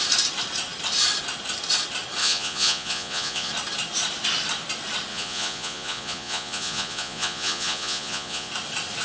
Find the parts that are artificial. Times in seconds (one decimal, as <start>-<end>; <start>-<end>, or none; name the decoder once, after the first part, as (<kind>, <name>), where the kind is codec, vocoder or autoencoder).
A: 2.2-3.5 (vocoder, Vocos); 5.1-8.5